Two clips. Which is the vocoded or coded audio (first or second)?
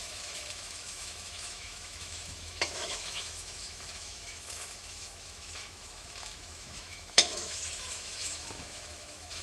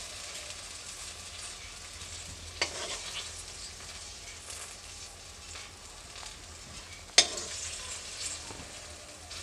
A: first